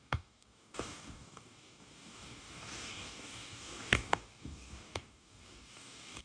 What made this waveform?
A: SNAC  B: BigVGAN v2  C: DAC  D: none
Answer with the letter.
C